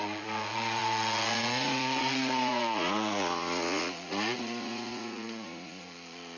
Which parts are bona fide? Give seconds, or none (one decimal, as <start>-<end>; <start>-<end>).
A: none